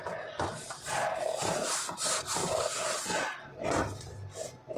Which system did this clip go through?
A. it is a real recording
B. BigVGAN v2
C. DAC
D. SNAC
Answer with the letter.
A